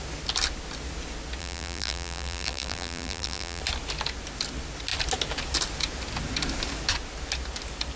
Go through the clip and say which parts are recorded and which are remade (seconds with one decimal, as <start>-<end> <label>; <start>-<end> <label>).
0.0-1.4 recorded; 1.4-3.6 remade; 3.6-8.0 recorded